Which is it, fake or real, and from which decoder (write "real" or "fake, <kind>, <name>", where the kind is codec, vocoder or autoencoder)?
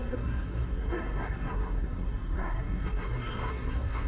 fake, codec, SNAC